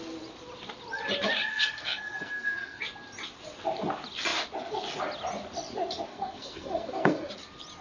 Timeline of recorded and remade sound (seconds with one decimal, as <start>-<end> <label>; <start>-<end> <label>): 0.0-1.5 recorded; 1.5-2.8 remade; 2.8-6.1 recorded; 6.1-7.3 remade; 7.3-7.8 recorded